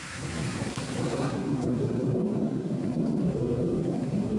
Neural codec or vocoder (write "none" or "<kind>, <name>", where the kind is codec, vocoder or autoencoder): codec, SNAC